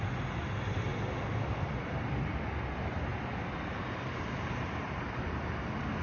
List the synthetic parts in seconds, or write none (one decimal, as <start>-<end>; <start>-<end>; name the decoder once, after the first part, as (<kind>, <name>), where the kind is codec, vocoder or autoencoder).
none

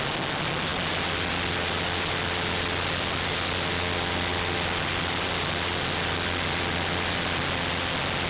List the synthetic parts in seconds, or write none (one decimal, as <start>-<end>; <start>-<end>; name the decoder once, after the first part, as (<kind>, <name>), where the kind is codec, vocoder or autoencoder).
none

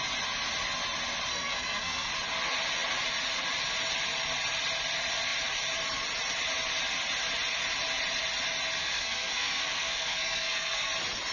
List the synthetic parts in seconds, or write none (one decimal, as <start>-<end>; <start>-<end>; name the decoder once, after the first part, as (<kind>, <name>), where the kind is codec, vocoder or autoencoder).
1.3-2.1 (codec, SNAC); 8.8-10.9

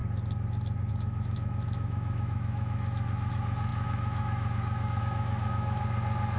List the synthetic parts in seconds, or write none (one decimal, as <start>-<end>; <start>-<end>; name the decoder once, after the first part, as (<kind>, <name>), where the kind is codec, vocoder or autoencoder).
0.9-5.8 (autoencoder, DAC-VAE)

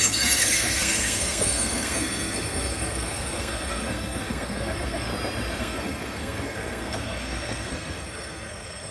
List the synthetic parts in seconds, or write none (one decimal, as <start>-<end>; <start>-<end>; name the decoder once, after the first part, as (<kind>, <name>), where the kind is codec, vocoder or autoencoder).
0.0-5.1 (codec, SNAC); 5.6-8.9

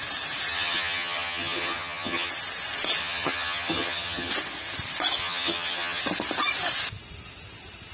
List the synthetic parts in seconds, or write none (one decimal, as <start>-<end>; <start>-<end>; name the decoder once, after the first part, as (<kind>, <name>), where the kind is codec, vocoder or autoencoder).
0.5-2.3 (vocoder, HiFi-GAN); 3.0-4.3; 5.2-6.0